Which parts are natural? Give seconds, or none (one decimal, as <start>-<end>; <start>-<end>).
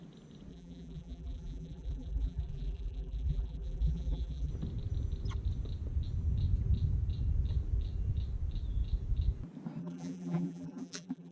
0.0-0.5; 4.5-9.8